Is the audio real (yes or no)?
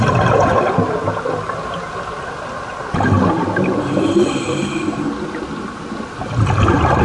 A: yes